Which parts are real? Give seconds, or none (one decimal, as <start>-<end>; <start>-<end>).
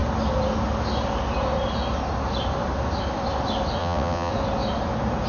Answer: 0.0-3.8; 4.3-5.3